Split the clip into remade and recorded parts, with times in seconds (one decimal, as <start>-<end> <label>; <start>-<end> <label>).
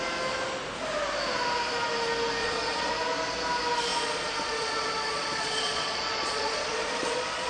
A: 0.0-2.4 recorded; 2.4-2.9 remade; 2.9-3.9 recorded; 3.9-7.5 remade